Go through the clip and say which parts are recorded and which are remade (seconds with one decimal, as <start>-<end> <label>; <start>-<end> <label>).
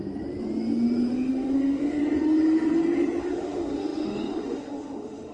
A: 0.0-1.1 recorded; 1.1-2.0 remade; 2.0-3.2 recorded; 3.2-5.3 remade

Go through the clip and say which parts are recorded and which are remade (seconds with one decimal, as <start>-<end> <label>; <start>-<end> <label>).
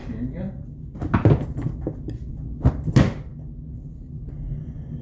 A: 0.0-5.0 recorded